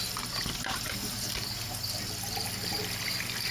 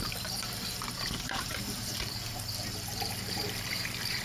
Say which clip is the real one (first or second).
first